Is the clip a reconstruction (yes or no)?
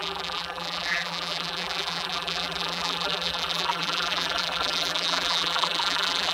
yes